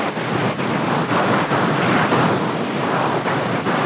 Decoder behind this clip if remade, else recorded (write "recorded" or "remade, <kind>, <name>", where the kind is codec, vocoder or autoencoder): remade, vocoder, BigVGAN v2